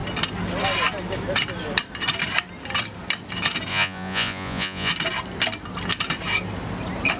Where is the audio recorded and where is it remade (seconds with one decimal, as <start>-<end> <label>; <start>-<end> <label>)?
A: 0.0-3.7 recorded; 3.7-4.9 remade; 4.9-7.2 recorded